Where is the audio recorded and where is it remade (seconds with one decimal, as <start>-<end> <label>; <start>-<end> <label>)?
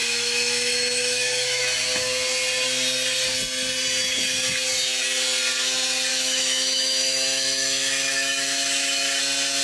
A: 0.0-1.6 remade; 1.6-6.1 recorded; 6.1-9.2 remade; 9.2-9.6 recorded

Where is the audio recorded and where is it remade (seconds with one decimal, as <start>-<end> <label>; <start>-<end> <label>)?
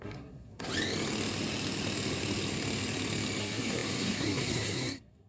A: 0.0-0.7 remade; 0.7-3.4 recorded; 3.4-5.3 remade